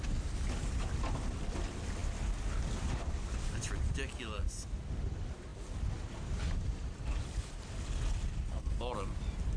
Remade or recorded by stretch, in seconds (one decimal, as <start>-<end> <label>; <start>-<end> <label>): 0.0-9.6 recorded